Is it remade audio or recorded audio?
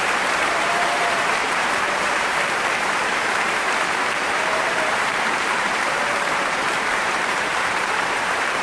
remade